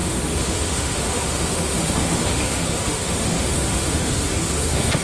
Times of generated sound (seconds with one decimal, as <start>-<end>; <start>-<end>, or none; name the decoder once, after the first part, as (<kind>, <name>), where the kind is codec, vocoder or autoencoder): 0.0-5.0 (autoencoder, DAC-VAE)